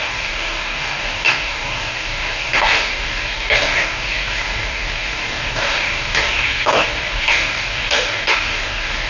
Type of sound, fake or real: fake